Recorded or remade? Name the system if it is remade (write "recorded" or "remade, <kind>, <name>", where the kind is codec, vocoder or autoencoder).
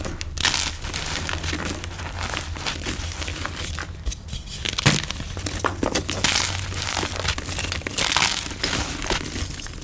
recorded